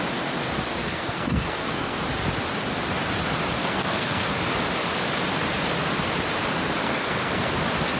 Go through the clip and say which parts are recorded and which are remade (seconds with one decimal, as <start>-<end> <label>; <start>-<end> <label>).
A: 0.0-0.8 recorded; 0.8-2.0 remade; 2.0-3.6 recorded; 3.6-4.3 remade; 4.3-6.8 recorded; 6.8-7.5 remade; 7.5-8.0 recorded